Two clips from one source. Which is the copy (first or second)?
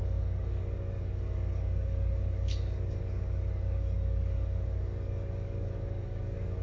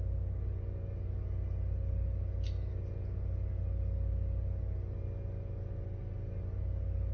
first